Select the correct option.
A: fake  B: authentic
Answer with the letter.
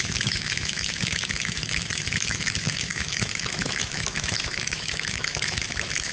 A